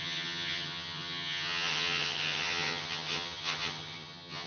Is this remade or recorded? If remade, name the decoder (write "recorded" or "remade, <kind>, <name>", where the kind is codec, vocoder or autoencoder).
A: remade, vocoder, HiFi-GAN